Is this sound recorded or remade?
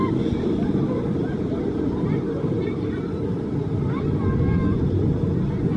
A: recorded